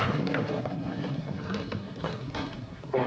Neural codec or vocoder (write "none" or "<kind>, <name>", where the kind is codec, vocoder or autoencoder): codec, SNAC